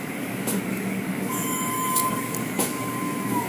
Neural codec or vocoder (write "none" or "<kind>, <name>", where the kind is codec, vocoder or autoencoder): codec, DAC